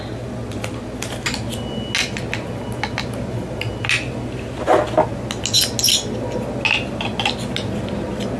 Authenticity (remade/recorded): recorded